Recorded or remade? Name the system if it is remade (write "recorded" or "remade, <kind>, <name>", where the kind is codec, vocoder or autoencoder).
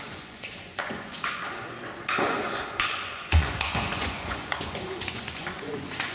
remade, vocoder, Vocos